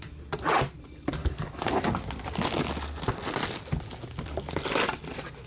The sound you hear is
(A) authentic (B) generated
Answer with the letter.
A